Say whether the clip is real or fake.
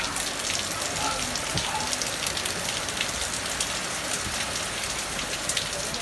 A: real